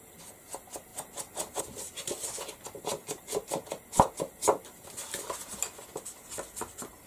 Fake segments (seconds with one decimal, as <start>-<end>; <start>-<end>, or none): none